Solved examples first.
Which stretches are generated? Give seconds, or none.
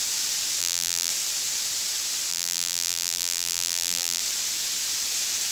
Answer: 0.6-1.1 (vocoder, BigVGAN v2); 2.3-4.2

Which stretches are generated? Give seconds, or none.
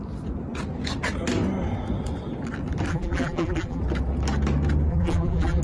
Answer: 2.9-3.8 (vocoder, BigVGAN v2); 4.9-5.6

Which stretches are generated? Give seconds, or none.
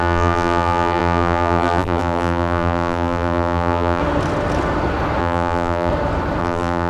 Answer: 0.0-4.0 (vocoder, BigVGAN v2); 5.2-5.9; 6.4-6.9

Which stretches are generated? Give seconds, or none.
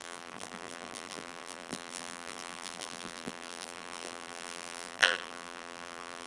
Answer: 0.0-6.3 (vocoder, BigVGAN v2)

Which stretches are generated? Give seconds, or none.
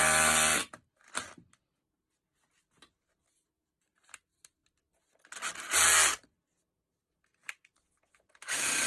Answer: none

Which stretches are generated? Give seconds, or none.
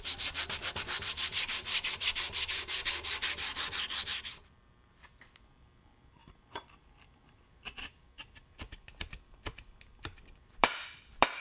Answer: 0.0-11.4 (vocoder, BigVGAN v2)